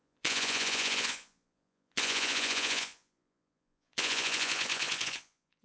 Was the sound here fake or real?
fake